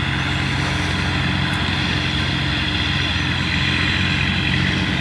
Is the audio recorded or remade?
recorded